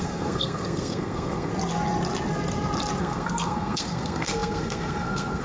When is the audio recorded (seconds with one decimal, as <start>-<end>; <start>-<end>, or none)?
1.5-3.0